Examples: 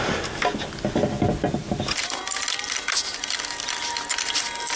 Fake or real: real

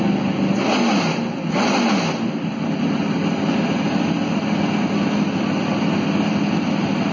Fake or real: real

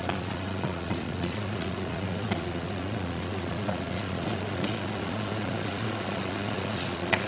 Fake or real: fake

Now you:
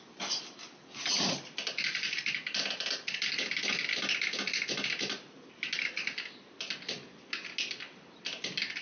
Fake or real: real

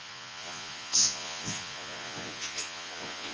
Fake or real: fake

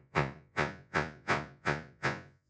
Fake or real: fake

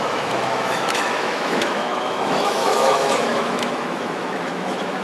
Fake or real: fake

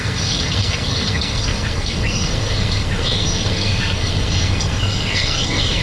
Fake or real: fake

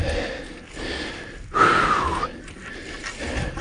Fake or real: real